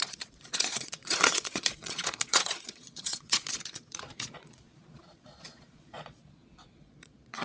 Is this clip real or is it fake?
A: fake